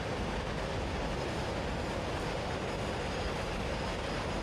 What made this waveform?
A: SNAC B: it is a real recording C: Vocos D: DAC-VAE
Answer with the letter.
B